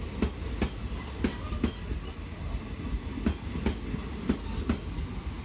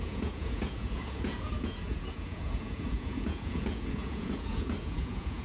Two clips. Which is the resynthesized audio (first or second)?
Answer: second